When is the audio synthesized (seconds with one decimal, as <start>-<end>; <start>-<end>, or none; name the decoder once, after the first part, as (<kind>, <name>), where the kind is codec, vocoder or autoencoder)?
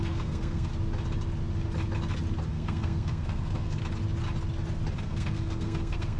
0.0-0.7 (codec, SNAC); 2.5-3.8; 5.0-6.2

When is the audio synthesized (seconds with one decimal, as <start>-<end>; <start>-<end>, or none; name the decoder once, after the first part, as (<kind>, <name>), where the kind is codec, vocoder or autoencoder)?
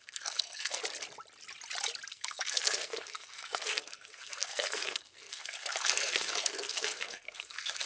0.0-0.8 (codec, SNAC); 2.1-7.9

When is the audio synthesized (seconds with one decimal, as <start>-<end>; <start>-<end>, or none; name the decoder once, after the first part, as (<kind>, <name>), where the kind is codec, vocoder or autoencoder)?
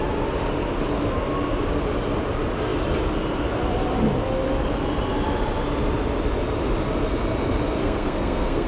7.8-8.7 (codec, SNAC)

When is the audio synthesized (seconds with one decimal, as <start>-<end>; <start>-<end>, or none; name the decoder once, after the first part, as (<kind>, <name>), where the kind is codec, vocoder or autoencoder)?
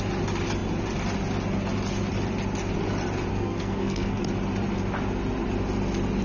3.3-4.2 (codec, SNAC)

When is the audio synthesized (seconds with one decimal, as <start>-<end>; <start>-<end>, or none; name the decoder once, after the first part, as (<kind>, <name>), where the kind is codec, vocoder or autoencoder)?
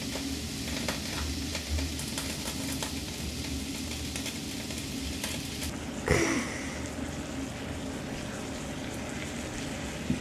none